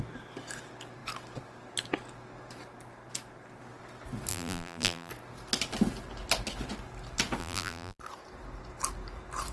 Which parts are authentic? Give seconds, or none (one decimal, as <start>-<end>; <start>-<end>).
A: 0.0-4.3; 5.1-7.4; 8.0-9.5

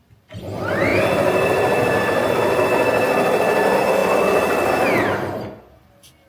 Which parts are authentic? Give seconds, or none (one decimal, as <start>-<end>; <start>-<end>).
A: 0.0-0.9; 2.3-6.3

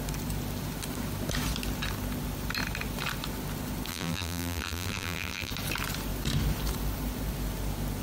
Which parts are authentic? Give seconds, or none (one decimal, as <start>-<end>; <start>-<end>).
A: 0.0-3.9; 5.5-8.0